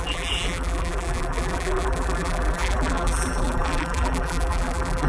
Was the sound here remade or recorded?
remade